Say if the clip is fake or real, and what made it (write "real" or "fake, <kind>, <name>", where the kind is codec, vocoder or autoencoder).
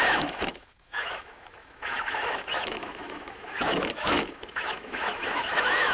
fake, autoencoder, DAC-VAE